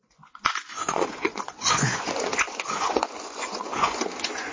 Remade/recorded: remade